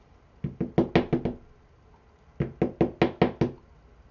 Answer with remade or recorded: recorded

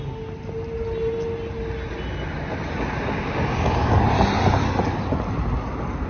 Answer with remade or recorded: recorded